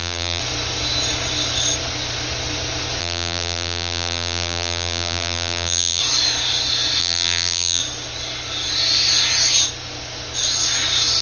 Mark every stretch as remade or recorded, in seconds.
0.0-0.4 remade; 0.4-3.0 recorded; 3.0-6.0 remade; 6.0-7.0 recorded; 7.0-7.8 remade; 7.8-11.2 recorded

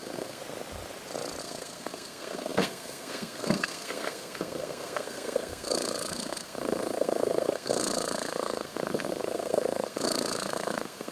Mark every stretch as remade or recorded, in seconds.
0.0-0.4 remade; 0.4-1.4 recorded; 1.4-11.1 remade

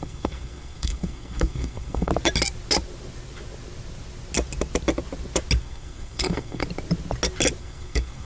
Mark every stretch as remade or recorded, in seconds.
0.0-2.1 remade; 2.1-5.6 recorded; 5.6-6.6 remade; 6.6-7.6 recorded; 7.6-8.2 remade

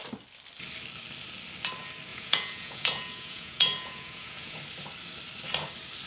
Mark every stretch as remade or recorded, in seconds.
0.0-2.1 recorded; 2.1-4.6 remade; 4.6-6.1 recorded

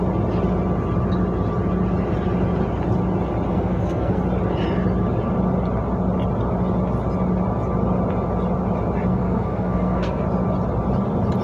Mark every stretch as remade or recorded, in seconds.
0.0-3.5 recorded; 3.5-4.2 remade; 4.2-9.1 recorded; 9.1-10.2 remade; 10.2-11.4 recorded

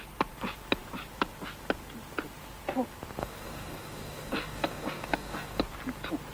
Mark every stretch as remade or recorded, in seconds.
0.0-3.2 recorded; 3.2-5.6 remade; 5.6-6.3 recorded

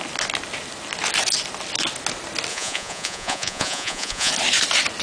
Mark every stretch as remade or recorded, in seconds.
0.0-2.5 recorded; 2.5-4.3 remade; 4.3-5.0 recorded